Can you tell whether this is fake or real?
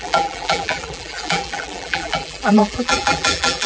fake